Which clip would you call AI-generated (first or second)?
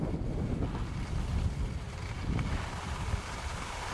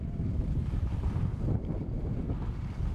second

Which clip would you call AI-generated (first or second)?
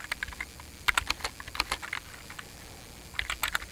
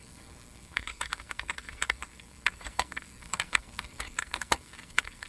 second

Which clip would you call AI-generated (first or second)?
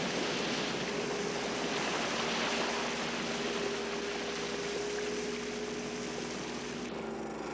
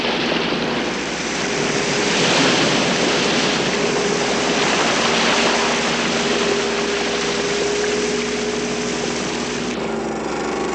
second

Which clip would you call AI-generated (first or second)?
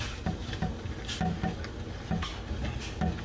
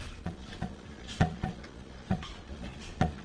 second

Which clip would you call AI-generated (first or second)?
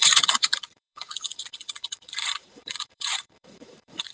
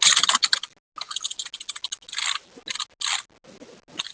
first